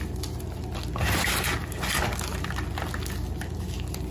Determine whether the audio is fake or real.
real